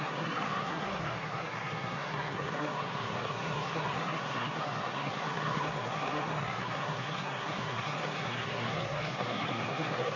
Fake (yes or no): yes